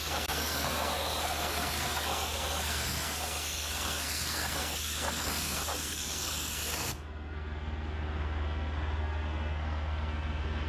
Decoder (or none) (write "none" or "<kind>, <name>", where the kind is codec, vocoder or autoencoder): codec, SNAC